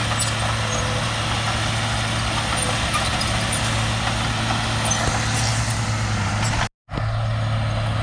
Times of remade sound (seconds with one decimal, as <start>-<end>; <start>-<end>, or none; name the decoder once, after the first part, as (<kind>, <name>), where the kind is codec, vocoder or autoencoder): none